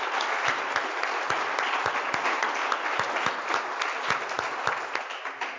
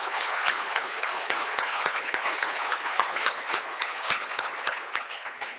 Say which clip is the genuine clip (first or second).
first